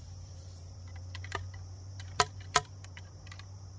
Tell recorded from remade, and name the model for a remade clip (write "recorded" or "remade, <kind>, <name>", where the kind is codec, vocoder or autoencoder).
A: remade, vocoder, BigVGAN v2